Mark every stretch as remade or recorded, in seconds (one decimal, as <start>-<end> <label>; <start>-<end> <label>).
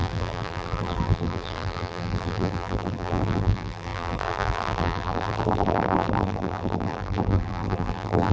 0.0-8.3 remade